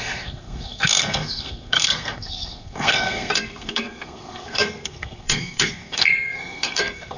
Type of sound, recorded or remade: remade